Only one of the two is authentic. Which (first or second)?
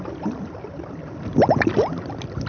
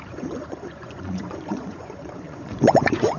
first